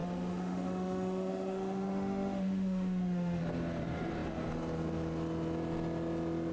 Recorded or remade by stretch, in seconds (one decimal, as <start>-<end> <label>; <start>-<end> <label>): 0.0-3.4 remade; 3.4-6.5 recorded